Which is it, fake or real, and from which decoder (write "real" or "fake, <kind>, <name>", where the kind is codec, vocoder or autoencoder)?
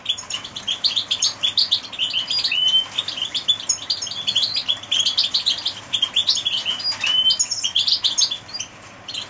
real